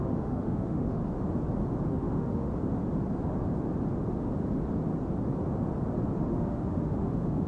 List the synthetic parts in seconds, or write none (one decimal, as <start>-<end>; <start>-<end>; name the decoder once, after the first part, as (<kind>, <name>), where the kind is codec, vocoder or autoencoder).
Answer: 0.0-1.0 (autoencoder, DAC-VAE); 1.9-2.5; 6.2-7.5